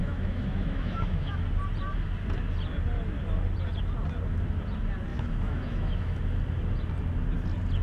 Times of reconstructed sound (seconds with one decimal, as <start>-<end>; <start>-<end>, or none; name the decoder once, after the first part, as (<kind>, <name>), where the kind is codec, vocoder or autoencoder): 0.0-1.4 (autoencoder, DAC-VAE); 5.1-6.2